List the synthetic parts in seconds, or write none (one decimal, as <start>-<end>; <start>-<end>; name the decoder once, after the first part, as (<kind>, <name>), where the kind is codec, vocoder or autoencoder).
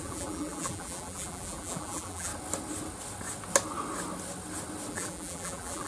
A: 0.0-2.3 (vocoder, BigVGAN v2); 4.9-5.9